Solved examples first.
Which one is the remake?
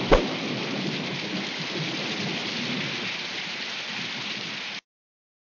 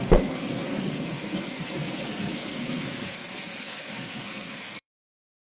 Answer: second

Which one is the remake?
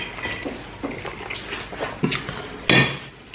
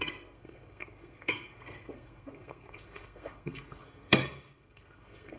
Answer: second